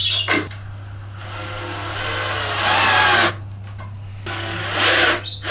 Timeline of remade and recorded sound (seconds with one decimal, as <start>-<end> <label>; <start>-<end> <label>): 0.0-4.1 recorded; 4.1-4.6 remade; 4.6-5.5 recorded

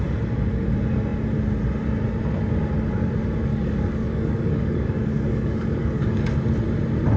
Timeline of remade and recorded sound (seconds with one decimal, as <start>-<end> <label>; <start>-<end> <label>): 0.0-3.5 recorded; 3.5-6.3 remade; 6.3-7.2 recorded

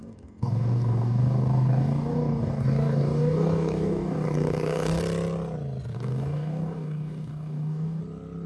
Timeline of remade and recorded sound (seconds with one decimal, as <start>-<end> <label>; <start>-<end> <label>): 0.0-5.0 remade; 5.0-5.9 recorded; 5.9-8.0 remade; 8.0-8.5 recorded

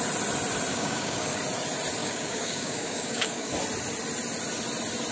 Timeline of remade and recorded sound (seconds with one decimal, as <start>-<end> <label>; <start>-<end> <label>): 0.0-0.7 recorded; 0.7-1.4 remade; 1.4-2.0 recorded; 2.0-3.5 remade; 3.5-5.1 recorded

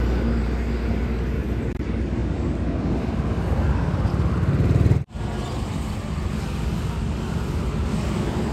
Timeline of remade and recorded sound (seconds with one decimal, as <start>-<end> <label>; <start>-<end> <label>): 0.0-4.1 remade; 4.1-6.3 recorded; 6.3-8.5 remade

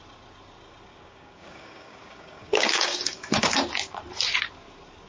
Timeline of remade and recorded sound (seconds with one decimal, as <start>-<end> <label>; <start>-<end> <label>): 0.0-0.9 recorded; 0.9-3.4 remade; 3.4-5.1 recorded